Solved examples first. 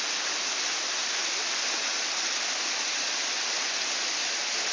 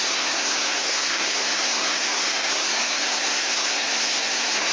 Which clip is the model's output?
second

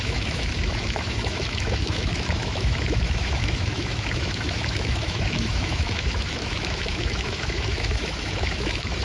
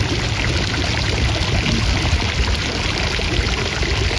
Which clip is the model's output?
first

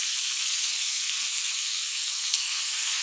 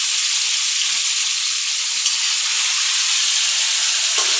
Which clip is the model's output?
first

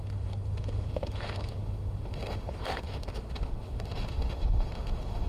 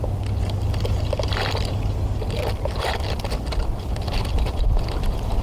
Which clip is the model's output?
first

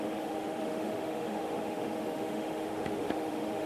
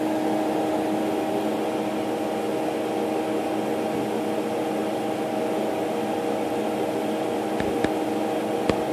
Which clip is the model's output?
first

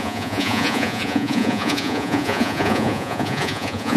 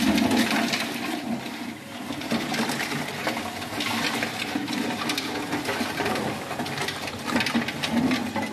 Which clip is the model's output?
first